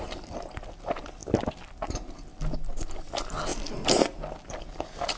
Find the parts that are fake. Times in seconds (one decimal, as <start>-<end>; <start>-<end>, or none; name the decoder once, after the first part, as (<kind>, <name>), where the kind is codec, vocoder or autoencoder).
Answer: none